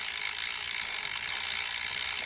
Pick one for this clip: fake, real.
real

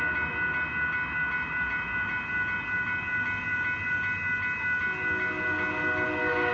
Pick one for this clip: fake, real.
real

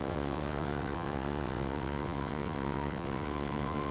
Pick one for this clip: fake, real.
fake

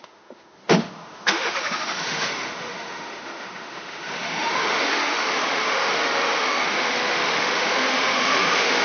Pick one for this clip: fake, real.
fake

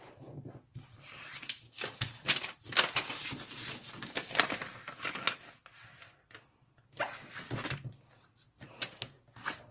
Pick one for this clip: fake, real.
real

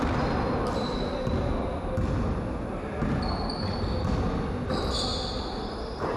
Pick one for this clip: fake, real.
real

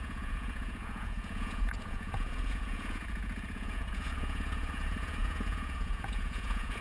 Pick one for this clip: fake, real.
fake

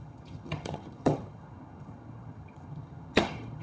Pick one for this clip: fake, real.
fake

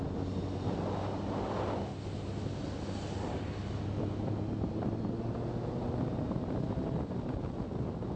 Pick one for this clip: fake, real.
real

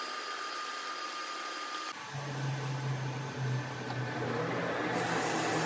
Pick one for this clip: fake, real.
real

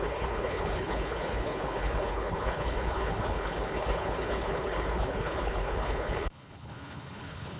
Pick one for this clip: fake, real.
fake